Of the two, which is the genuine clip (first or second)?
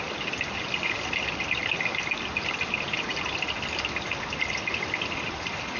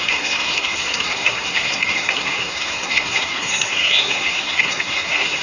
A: first